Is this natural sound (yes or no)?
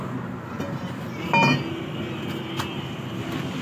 yes